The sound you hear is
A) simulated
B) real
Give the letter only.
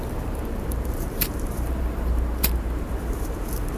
A